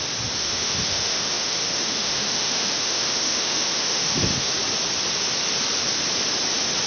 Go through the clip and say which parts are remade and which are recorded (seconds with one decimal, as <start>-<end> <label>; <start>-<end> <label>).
0.0-0.4 recorded; 0.4-4.5 remade; 4.5-6.9 recorded